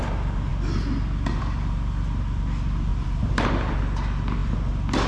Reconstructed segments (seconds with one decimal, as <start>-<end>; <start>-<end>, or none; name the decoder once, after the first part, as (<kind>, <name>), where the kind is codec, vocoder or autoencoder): 2.9-3.8 (vocoder, BigVGAN v2)